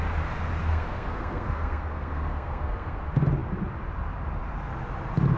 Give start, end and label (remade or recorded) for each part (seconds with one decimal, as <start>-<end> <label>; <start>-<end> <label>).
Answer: 0.0-0.6 recorded; 0.6-3.0 remade; 3.0-5.4 recorded